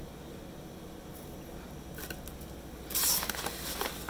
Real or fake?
real